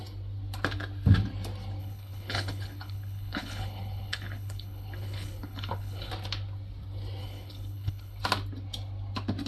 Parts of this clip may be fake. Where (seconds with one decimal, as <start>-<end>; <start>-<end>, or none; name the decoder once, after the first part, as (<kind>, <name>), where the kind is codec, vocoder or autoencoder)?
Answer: 1.8-6.1 (codec, HILCodec); 7.2-8.2